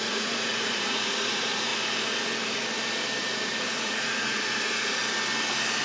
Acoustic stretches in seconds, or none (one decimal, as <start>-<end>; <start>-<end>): 1.7-3.2; 5.0-5.8